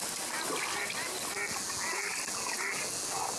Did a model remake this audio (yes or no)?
no